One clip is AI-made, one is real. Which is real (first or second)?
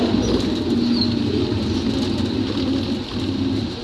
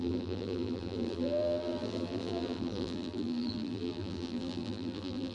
first